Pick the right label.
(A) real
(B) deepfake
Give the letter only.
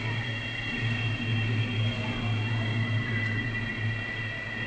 A